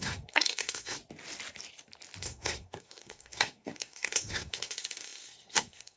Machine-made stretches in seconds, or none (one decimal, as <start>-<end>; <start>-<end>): 0.0-1.0; 2.2-6.0